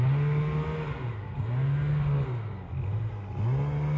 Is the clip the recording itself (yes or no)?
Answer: yes